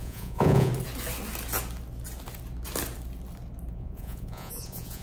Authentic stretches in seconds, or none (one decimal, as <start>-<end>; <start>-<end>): 0.7-3.7